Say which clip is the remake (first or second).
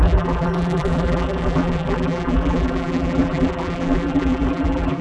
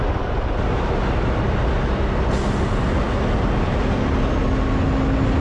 first